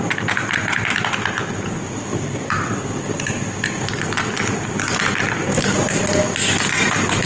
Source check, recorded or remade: recorded